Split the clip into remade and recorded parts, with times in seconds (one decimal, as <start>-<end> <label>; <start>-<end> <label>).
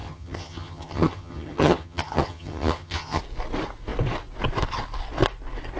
0.0-3.2 remade; 3.2-5.8 recorded